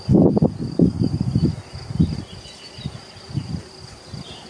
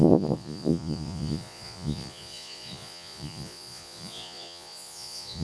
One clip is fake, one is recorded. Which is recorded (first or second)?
first